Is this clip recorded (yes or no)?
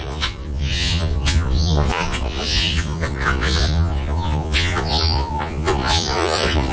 no